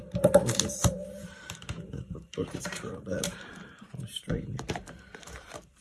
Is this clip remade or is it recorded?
remade